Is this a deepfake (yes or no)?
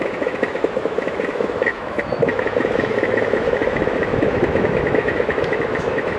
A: yes